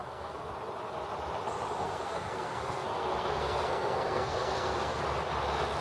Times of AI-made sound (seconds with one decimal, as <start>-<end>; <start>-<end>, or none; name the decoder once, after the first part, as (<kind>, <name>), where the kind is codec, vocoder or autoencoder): 0.0-0.5 (codec, SNAC); 1.8-5.0